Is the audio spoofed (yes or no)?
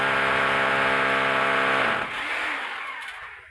no